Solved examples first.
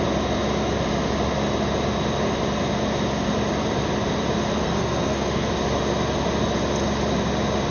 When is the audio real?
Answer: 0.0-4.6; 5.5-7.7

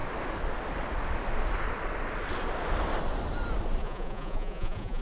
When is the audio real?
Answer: 0.0-3.8